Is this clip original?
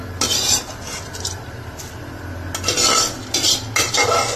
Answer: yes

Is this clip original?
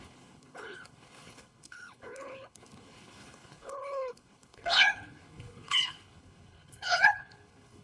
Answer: no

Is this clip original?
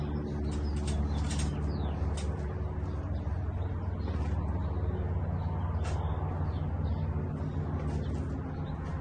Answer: yes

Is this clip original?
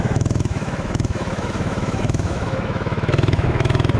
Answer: no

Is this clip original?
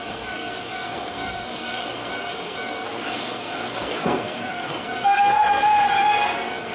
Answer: no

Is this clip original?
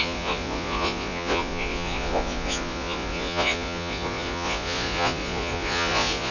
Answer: no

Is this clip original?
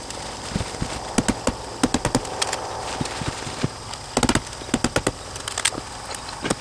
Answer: yes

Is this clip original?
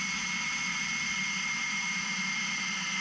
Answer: yes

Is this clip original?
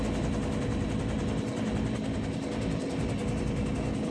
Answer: yes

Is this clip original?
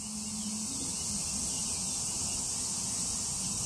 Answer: yes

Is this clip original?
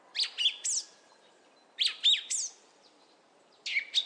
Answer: yes